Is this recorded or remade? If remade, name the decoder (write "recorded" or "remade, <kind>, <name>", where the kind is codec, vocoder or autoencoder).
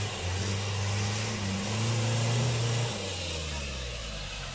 recorded